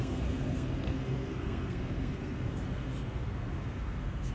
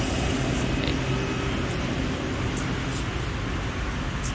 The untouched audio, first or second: second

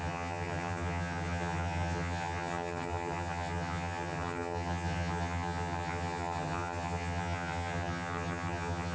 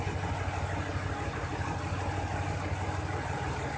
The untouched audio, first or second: second